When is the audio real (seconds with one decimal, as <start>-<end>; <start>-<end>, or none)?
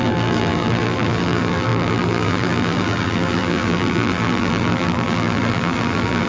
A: none